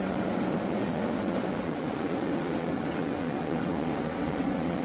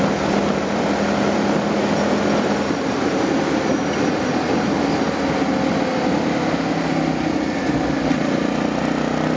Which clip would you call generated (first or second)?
first